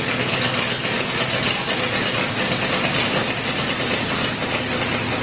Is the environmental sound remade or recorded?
recorded